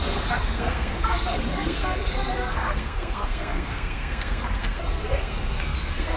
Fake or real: fake